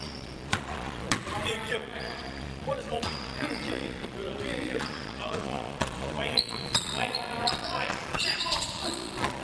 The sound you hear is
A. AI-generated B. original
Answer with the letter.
A